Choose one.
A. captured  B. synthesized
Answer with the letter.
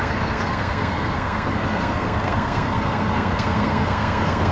B